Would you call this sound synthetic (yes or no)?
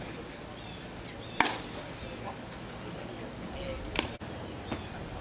no